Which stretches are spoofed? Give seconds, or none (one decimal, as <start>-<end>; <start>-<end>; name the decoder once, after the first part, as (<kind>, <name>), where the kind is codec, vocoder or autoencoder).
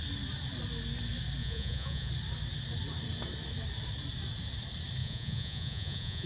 1.4-2.1 (vocoder, Vocos); 5.0-6.3